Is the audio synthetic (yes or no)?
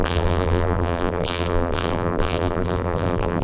yes